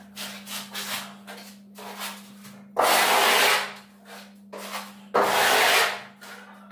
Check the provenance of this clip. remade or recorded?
recorded